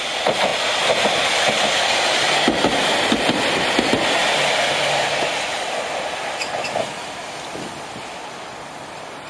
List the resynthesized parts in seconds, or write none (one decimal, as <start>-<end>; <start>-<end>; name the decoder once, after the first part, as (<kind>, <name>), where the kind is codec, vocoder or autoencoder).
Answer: 0.0-0.5 (vocoder, BigVGAN v2); 3.8-9.3